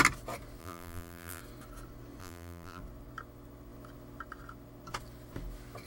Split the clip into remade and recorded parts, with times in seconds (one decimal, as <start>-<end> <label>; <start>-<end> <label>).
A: 0.0-0.6 recorded; 0.6-1.4 remade; 1.4-2.2 recorded; 2.2-2.8 remade; 2.8-5.9 recorded

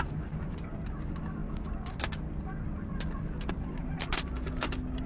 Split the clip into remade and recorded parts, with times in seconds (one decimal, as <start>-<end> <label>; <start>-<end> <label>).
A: 0.0-5.1 recorded

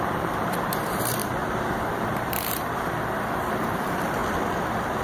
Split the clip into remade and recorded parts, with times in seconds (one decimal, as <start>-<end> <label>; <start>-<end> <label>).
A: 0.0-1.2 remade; 1.2-1.7 recorded; 1.7-4.2 remade; 4.2-5.0 recorded

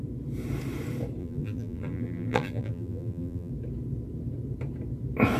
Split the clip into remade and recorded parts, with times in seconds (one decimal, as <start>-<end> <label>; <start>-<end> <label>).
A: 0.0-1.2 recorded; 1.2-3.5 remade; 3.5-5.4 recorded

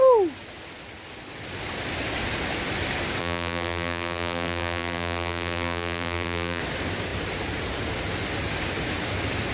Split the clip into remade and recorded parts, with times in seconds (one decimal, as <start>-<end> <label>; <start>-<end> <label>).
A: 0.0-3.2 recorded; 3.2-6.6 remade; 6.6-9.5 recorded

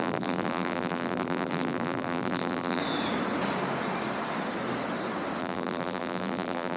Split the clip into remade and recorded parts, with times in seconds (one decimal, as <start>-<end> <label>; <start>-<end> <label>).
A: 0.0-2.8 remade; 2.8-5.4 recorded; 5.4-6.8 remade